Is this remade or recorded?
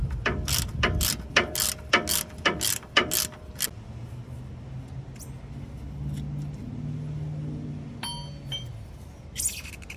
recorded